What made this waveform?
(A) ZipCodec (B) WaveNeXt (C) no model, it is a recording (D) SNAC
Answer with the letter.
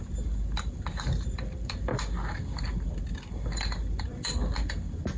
C